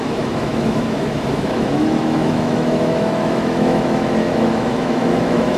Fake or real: fake